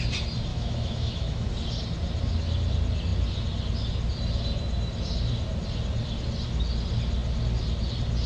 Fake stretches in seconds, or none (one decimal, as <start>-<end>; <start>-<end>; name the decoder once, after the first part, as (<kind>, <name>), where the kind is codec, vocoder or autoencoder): 0.5-1.5 (autoencoder, DAC-VAE)